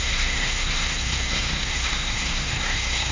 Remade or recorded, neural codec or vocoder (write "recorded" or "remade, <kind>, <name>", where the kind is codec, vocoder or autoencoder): remade, codec, SNAC